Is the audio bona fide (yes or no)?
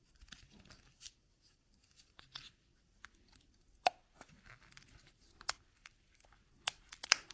no